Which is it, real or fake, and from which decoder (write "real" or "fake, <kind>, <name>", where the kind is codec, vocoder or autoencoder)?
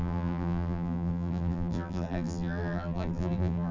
fake, vocoder, BigVGAN v2